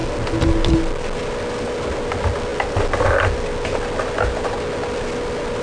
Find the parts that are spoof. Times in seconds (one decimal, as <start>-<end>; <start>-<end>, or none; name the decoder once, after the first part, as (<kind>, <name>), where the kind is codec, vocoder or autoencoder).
none